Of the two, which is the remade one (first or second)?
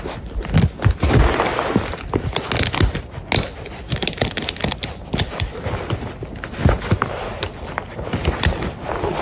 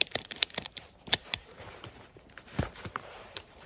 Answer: second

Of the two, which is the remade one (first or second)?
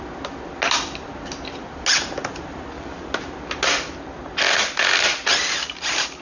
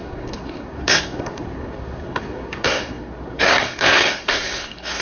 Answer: second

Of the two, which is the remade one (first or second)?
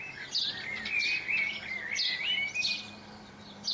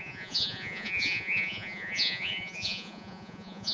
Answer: second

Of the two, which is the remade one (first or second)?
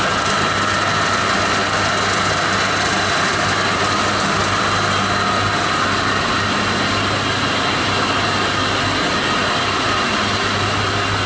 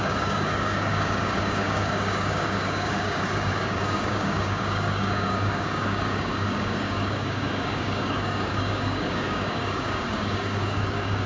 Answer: second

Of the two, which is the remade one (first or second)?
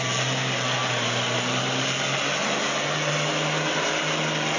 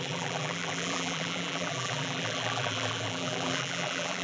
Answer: second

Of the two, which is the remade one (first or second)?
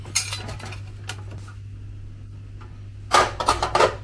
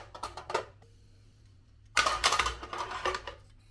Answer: second